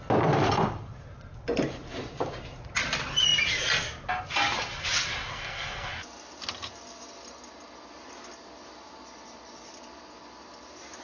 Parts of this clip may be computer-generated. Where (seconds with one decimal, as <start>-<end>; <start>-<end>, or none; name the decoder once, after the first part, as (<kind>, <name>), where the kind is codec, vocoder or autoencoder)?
5.3-5.9 (codec, SNAC)